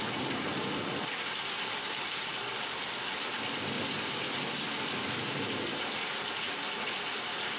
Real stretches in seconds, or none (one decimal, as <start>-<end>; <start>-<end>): 2.3-6.1